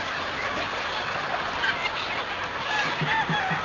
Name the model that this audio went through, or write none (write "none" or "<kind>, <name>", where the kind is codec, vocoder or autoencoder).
none